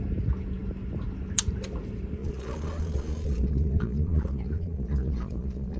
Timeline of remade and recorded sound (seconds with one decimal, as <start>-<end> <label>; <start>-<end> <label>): 0.0-2.2 recorded; 2.2-5.8 remade